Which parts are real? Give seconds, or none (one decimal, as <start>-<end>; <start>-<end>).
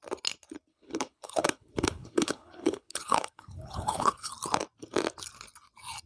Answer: 0.0-0.7; 4.3-6.1